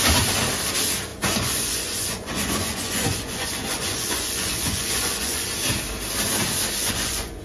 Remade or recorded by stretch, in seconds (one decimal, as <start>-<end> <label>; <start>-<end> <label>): 0.0-1.1 recorded; 1.1-5.5 remade; 5.5-6.8 recorded; 6.8-7.4 remade